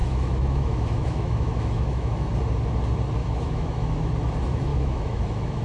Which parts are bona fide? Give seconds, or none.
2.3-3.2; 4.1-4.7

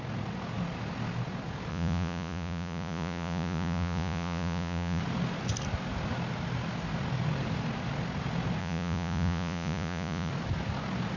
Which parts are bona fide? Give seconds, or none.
0.0-1.7; 5.0-8.6; 10.3-11.2

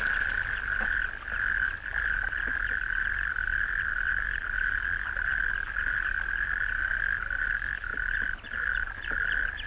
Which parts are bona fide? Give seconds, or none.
0.0-9.7

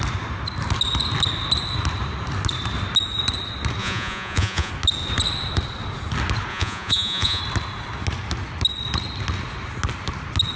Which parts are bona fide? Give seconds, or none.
0.0-3.8; 4.7-6.5; 7.4-10.6

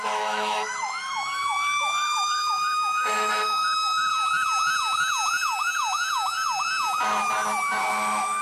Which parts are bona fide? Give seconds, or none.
4.1-7.8